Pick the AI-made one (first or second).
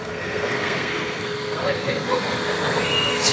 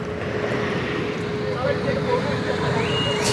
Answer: first